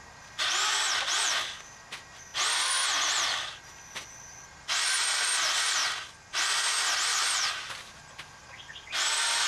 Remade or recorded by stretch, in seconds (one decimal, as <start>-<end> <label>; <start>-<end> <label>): 0.0-9.5 recorded